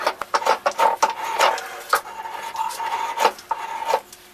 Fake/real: real